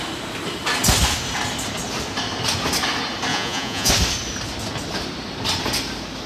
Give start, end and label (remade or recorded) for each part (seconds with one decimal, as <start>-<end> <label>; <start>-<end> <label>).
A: 0.0-3.3 recorded; 3.3-3.9 remade; 3.9-6.3 recorded